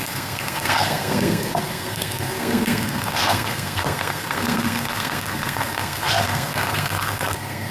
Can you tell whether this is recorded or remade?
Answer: remade